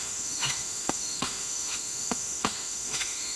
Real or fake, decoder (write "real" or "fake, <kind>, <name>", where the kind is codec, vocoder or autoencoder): fake, autoencoder, DAC-VAE